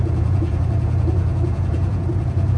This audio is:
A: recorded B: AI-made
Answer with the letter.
B